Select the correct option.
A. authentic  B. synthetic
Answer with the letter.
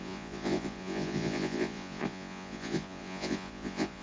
B